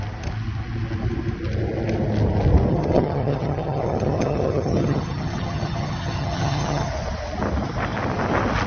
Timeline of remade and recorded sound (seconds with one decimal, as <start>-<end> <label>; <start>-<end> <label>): 0.0-2.7 recorded; 2.7-6.9 remade; 6.9-8.7 recorded